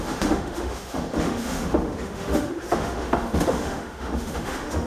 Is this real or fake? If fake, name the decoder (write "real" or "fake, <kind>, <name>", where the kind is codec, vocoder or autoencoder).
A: fake, autoencoder, DAC-VAE